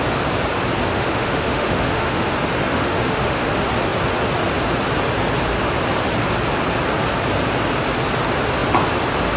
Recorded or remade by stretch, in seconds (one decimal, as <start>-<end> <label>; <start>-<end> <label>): 0.0-0.9 recorded; 0.9-2.3 remade; 2.3-2.7 recorded; 2.7-3.5 remade; 3.5-9.4 recorded